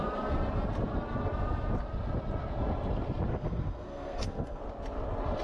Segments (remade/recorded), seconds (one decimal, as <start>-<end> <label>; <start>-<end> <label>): 0.0-3.3 recorded; 3.3-4.6 remade; 4.6-5.4 recorded